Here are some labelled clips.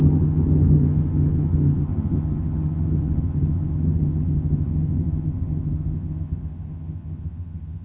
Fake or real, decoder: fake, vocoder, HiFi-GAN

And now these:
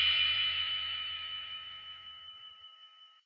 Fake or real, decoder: fake, autoencoder, DAC-VAE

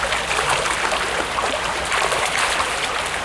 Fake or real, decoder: real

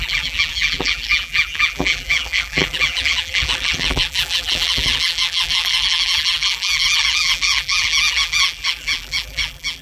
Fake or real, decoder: fake, vocoder, BigVGAN v2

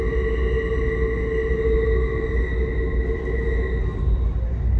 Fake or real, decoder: real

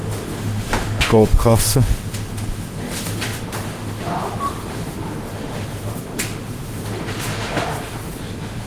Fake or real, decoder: fake, autoencoder, DAC-VAE